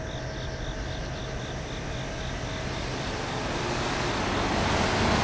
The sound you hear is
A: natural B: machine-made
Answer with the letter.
A